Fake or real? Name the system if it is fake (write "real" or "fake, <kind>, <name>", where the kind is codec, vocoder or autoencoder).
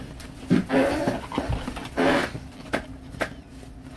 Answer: real